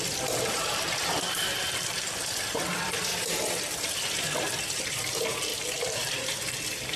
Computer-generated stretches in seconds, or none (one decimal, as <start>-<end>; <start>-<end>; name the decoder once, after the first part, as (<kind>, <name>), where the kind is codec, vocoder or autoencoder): 0.0-7.0 (vocoder, BigVGAN v2)